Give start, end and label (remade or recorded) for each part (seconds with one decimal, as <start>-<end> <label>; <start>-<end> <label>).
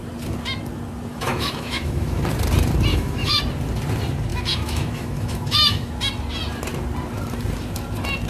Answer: 0.0-1.1 recorded; 1.1-2.2 remade; 2.2-2.9 recorded; 2.9-3.4 remade; 3.4-4.3 recorded; 4.3-5.9 remade; 5.9-8.3 recorded